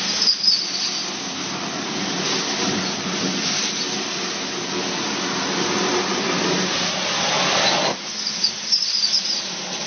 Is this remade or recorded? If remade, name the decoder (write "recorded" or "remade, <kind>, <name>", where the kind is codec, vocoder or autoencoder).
recorded